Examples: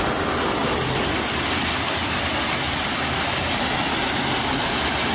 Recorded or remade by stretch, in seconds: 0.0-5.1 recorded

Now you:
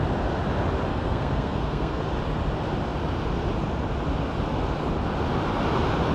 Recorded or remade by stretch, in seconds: 0.0-0.9 recorded; 0.9-2.0 remade; 2.0-6.1 recorded

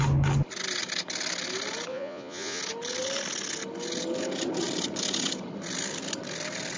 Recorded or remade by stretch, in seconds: 0.0-1.9 recorded; 1.9-2.6 remade; 2.6-6.8 recorded

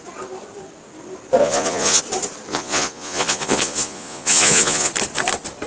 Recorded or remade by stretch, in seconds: 0.0-1.4 recorded; 1.4-2.0 remade; 2.0-2.5 recorded; 2.5-4.9 remade; 4.9-5.7 recorded

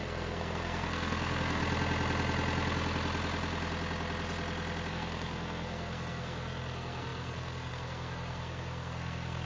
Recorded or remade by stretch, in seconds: 0.0-1.6 remade; 1.6-4.9 recorded; 4.9-9.5 remade

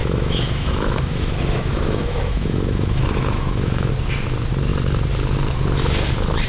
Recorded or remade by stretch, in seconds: 0.0-3.9 remade; 3.9-6.5 recorded